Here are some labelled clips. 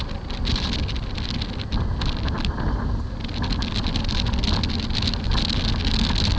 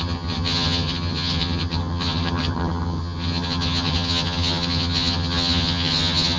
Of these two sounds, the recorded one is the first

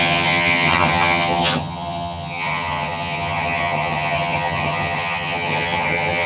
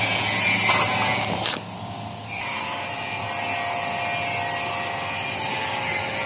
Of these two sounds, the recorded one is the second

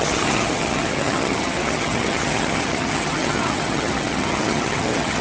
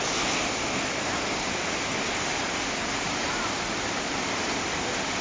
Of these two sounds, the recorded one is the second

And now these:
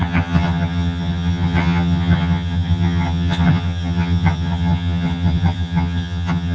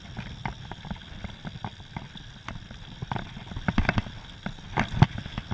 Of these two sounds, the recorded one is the second